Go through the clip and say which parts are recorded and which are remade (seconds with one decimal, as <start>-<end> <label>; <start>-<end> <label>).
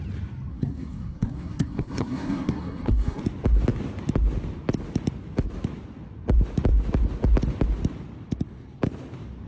0.0-0.5 recorded; 0.5-3.2 remade; 3.2-9.5 recorded